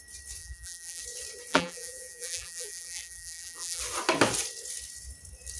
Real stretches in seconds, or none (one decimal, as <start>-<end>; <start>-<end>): 0.0-0.4; 1.0-1.5; 3.8-5.6